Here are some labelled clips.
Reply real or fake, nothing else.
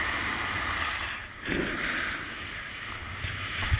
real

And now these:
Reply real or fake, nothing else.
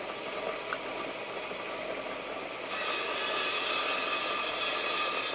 real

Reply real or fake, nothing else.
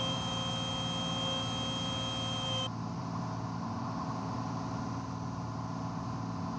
real